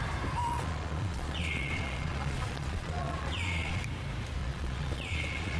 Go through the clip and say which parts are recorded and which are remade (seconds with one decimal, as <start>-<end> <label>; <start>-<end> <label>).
0.0-0.4 recorded; 0.4-3.8 remade; 3.8-4.4 recorded; 4.4-5.6 remade